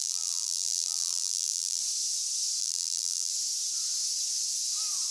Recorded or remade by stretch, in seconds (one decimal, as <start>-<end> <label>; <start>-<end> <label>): 0.0-1.8 remade; 1.8-2.6 recorded; 2.6-3.3 remade; 3.3-5.1 recorded